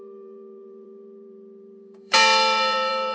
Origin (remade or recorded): remade